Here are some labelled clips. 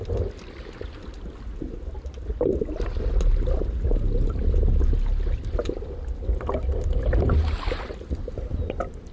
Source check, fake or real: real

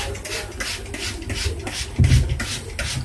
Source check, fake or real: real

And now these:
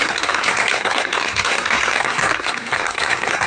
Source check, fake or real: fake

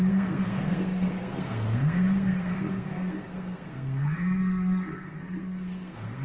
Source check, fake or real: fake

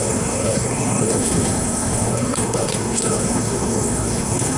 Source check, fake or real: fake